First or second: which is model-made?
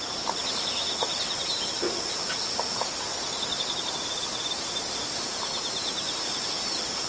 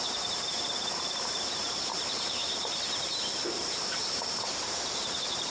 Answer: second